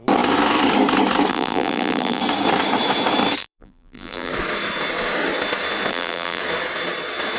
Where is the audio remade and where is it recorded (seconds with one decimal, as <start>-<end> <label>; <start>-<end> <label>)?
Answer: 0.0-1.3 recorded; 1.3-2.2 remade; 2.2-3.4 recorded; 3.4-4.3 remade; 4.3-5.9 recorded; 5.9-6.4 remade; 6.4-7.4 recorded